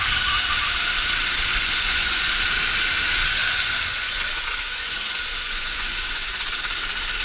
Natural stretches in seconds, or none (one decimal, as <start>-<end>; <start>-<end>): 0.0-1.5; 2.3-3.4; 6.6-7.2